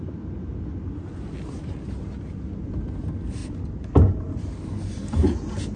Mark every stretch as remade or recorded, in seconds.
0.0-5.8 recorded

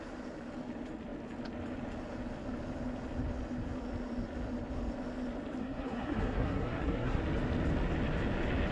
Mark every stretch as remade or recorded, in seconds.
0.0-5.6 recorded; 5.6-7.2 remade; 7.2-8.7 recorded

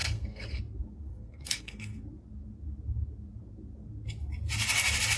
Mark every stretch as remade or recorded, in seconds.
0.0-0.6 remade; 0.6-1.1 recorded; 1.1-2.0 remade; 2.0-5.2 recorded

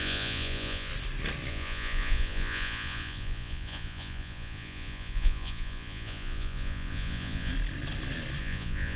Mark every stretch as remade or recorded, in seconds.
0.0-0.9 remade; 0.9-1.5 recorded; 1.5-7.5 remade; 7.5-8.4 recorded; 8.4-9.0 remade

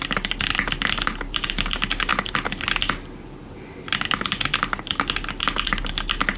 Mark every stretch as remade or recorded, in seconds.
0.0-6.4 recorded

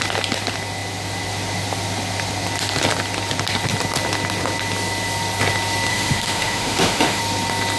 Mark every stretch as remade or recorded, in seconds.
0.0-5.9 recorded; 5.9-7.2 remade; 7.2-7.8 recorded